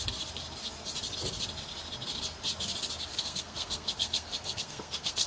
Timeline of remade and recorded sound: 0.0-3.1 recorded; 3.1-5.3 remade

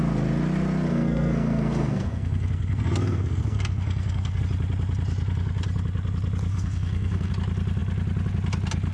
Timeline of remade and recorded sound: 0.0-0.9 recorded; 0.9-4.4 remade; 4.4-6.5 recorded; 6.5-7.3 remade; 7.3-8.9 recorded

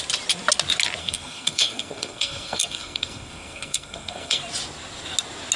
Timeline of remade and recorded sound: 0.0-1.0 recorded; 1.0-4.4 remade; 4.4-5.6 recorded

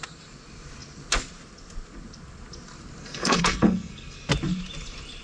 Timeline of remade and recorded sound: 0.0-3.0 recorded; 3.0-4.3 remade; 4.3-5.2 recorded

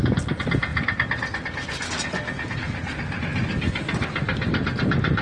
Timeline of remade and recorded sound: 0.0-5.2 recorded